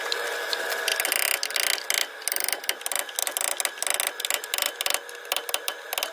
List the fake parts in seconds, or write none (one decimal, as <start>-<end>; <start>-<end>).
none